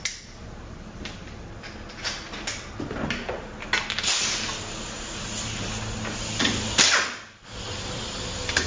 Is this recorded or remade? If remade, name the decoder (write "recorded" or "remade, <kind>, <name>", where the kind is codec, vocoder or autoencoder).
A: recorded